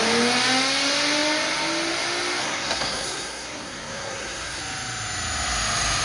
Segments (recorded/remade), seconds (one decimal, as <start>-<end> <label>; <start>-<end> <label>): 0.0-2.4 recorded; 2.4-4.6 remade; 4.6-6.0 recorded